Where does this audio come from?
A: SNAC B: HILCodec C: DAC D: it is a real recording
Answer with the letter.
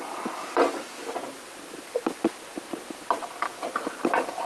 D